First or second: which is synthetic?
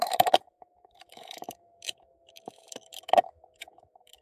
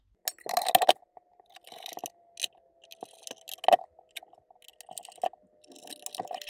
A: first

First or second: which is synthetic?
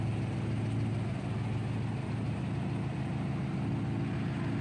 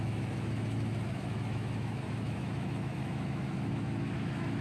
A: second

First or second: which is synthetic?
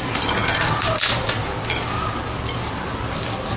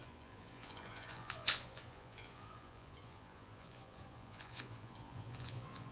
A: second